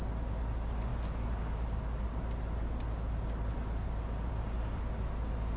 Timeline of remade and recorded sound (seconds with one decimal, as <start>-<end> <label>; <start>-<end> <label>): 0.0-5.6 recorded